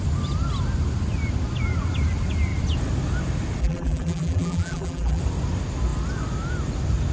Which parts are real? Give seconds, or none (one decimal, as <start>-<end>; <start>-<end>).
0.0-3.6; 5.2-7.1

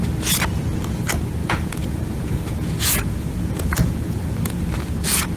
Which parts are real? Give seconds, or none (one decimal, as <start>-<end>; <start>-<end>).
0.0-1.4; 4.6-5.4

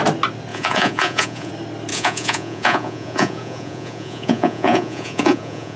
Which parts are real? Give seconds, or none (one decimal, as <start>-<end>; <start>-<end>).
0.0-0.5; 1.5-1.9

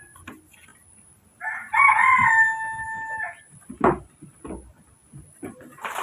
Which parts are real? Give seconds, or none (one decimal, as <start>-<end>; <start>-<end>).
0.0-5.0